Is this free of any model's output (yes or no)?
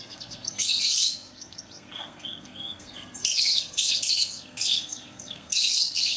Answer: no